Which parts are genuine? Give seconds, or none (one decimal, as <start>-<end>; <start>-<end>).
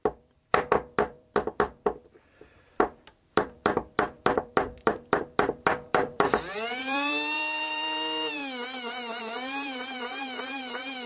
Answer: 8.4-9.2